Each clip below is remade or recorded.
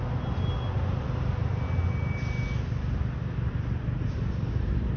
recorded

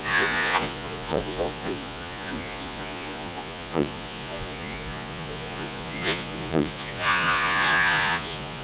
remade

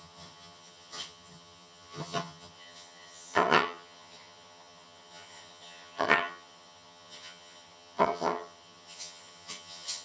remade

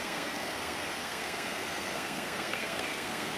remade